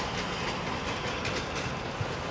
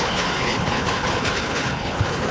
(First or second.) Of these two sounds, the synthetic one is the second